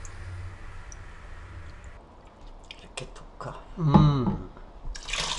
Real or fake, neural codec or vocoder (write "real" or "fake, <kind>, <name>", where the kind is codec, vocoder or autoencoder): real